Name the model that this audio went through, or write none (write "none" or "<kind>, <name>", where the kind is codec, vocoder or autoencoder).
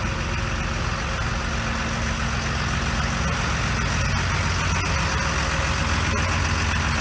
none